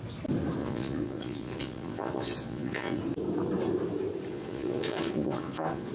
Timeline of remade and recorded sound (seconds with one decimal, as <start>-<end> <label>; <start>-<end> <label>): 0.0-0.6 recorded; 0.6-3.0 remade; 3.0-4.3 recorded; 4.3-5.9 remade